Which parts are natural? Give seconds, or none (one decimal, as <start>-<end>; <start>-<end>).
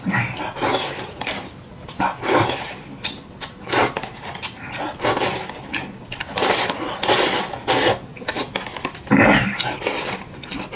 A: 0.0-1.7; 2.4-10.8